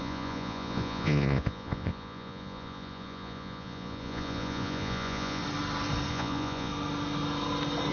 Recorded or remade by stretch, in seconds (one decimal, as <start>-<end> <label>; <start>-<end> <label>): 0.0-5.4 remade; 5.4-6.1 recorded; 6.1-6.7 remade; 6.7-7.9 recorded